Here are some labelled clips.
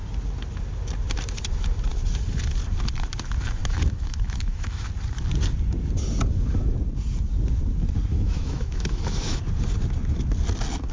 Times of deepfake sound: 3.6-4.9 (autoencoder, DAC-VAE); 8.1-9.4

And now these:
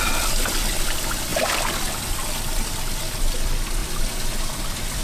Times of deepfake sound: none

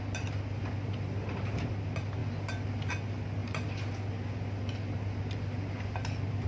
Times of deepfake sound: none

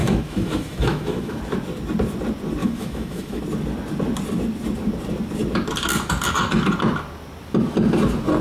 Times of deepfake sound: 0.0-1.4 (autoencoder, DAC-VAE); 2.6-3.4